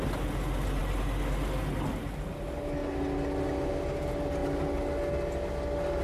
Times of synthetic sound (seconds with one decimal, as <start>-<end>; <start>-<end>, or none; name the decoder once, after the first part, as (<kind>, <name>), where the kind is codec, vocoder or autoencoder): none